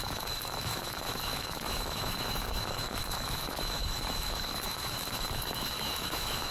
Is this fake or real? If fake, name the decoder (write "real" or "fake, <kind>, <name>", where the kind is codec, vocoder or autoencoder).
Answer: fake, autoencoder, DAC-VAE